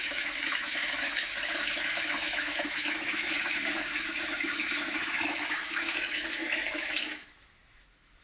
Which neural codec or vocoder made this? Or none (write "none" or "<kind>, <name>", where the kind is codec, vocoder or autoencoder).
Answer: autoencoder, DAC-VAE